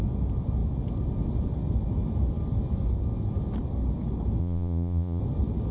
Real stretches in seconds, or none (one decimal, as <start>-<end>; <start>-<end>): 0.0-4.4; 5.2-5.7